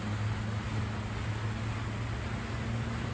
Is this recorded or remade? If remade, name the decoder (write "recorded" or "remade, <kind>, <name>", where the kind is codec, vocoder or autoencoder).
recorded